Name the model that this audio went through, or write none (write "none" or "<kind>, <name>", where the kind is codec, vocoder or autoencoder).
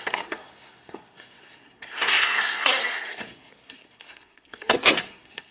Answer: codec, SNAC